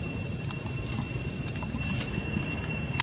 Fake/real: real